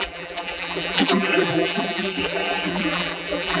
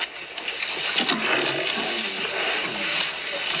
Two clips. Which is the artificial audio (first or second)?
first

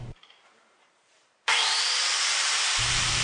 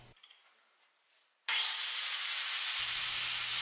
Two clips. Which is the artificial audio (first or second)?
first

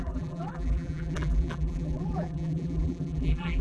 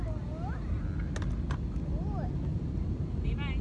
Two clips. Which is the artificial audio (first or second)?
first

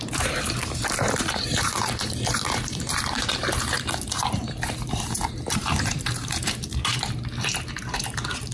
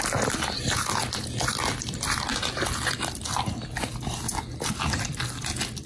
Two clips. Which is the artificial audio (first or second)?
first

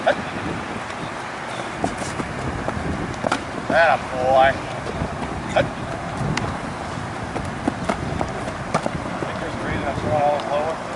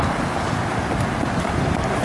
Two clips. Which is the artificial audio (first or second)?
first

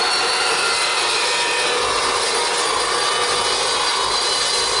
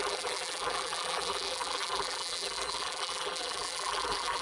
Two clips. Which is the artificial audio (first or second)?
second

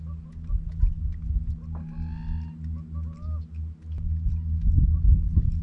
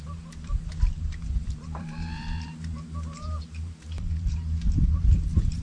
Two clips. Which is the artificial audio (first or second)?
second